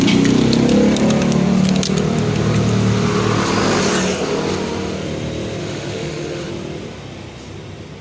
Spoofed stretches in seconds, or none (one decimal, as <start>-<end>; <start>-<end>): 5.6-6.5